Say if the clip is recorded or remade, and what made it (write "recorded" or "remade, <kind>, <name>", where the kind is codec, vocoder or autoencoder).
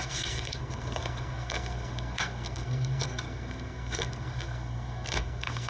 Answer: remade, codec, SNAC